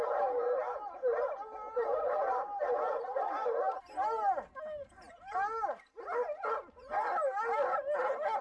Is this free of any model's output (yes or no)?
yes